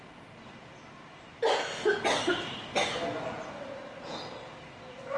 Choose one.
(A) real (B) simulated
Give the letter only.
A